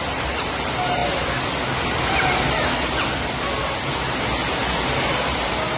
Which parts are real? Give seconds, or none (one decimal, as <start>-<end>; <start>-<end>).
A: 0.0-5.8